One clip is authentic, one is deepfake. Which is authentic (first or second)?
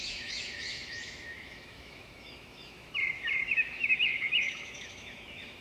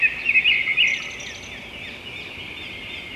second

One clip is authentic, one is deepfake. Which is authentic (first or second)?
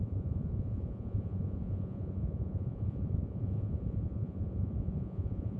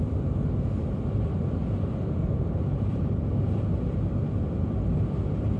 second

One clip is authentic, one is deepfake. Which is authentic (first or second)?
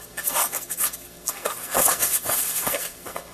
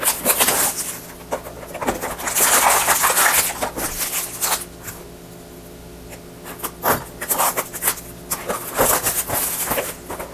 second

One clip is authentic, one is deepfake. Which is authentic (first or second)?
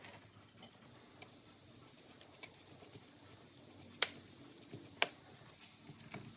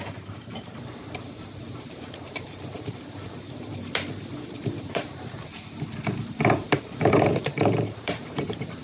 first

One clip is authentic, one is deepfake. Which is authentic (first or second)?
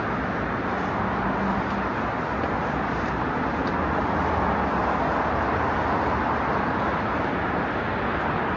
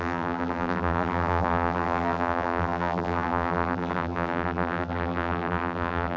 first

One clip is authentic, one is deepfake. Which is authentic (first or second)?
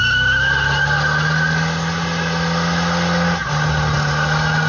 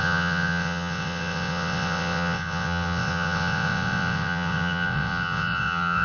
first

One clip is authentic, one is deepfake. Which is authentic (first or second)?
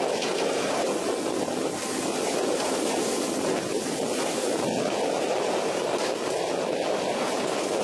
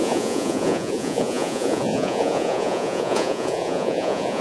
first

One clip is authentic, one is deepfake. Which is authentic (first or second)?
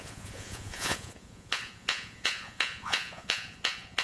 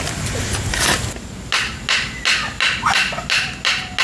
second